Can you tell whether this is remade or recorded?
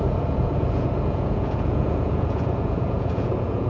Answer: remade